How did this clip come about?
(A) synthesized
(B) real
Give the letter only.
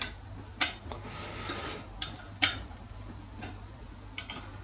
B